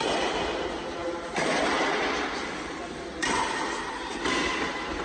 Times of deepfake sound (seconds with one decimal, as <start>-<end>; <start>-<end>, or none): none